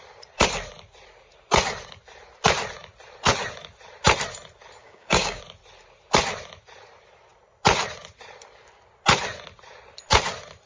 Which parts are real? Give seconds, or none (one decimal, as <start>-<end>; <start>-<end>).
0.0-4.8; 5.4-10.7